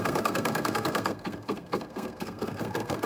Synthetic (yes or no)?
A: yes